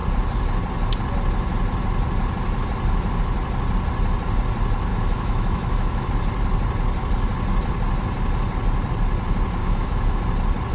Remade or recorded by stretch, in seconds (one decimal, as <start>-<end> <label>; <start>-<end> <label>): 0.0-4.9 recorded; 4.9-6.1 remade; 6.1-9.6 recorded; 9.6-10.2 remade; 10.2-10.7 recorded